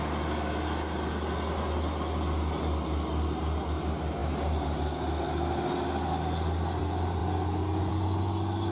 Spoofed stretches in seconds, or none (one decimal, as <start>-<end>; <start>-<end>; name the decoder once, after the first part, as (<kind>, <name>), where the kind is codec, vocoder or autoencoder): none